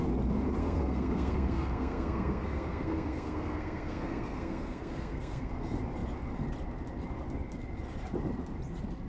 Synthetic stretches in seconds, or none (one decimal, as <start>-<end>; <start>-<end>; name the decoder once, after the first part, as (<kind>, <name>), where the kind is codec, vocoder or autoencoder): 0.6-5.5 (codec, SNAC)